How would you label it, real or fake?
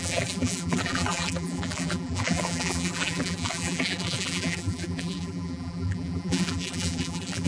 fake